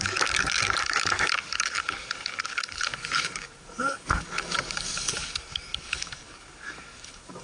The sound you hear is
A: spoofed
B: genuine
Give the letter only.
A